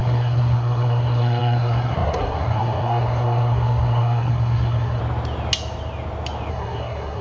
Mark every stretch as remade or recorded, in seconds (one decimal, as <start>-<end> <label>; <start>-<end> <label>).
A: 0.0-5.0 remade; 5.0-6.5 recorded; 6.5-7.2 remade